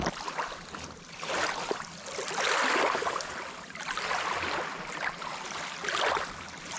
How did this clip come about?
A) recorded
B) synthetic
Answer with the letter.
B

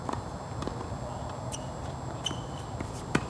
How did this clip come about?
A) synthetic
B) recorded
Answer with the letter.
A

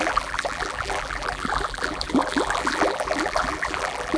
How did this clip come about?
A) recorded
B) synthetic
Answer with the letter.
B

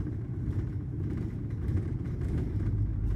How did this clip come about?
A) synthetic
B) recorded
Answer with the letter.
A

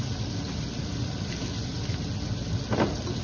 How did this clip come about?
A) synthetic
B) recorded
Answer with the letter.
B